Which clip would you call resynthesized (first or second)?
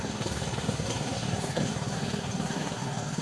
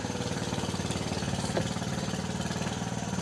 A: first